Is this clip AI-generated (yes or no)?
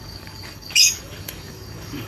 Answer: yes